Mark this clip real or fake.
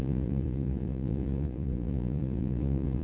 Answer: fake